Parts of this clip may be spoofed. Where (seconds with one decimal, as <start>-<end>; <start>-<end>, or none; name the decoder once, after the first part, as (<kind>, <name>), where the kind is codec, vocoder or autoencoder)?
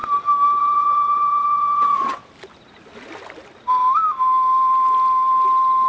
0.6-2.2 (vocoder, WaveNeXt)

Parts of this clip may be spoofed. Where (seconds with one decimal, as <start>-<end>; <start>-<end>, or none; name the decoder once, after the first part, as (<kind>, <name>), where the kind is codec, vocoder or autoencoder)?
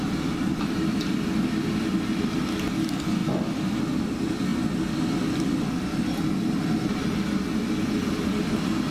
none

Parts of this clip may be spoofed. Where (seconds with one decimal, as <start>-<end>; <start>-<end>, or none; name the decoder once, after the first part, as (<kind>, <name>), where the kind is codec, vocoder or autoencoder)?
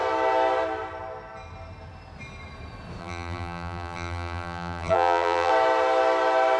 3.0-5.5 (vocoder, BigVGAN v2)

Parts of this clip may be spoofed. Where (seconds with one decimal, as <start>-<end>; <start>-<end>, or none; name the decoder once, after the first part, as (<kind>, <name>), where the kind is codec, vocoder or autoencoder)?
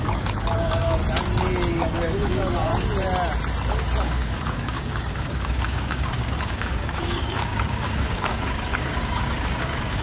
0.0-1.0 (codec, DAC); 1.7-2.7; 4.0-10.0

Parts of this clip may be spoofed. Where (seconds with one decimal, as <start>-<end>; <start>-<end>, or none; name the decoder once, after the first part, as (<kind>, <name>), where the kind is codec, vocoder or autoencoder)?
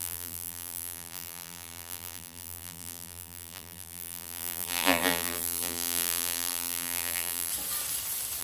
0.0-7.5 (vocoder, BigVGAN v2)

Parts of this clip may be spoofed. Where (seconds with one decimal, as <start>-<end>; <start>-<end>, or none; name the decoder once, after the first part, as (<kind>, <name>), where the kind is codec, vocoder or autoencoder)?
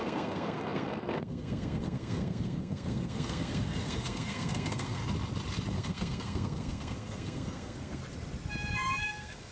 0.0-5.0 (codec, SNAC); 5.7-8.0; 9.0-9.5